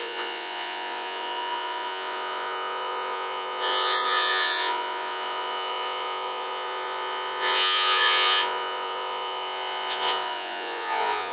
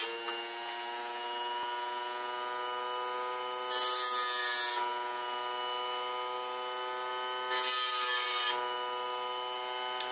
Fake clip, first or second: first